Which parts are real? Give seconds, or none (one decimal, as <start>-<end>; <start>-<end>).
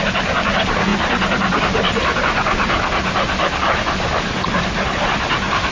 0.0-5.7